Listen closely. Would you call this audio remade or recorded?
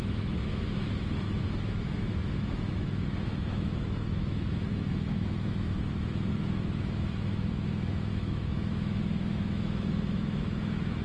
remade